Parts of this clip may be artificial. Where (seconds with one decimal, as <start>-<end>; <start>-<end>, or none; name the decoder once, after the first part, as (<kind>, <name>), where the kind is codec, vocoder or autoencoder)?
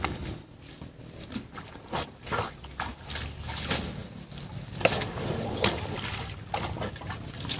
none